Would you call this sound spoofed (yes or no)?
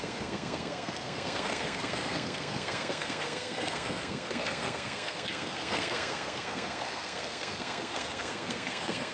yes